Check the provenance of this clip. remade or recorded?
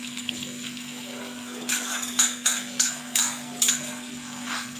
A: remade